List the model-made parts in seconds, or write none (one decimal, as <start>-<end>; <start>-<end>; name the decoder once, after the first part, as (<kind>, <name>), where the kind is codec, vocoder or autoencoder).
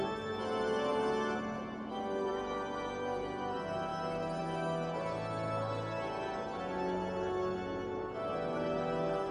none